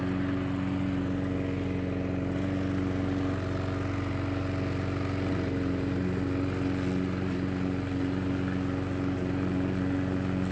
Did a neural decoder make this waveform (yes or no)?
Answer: no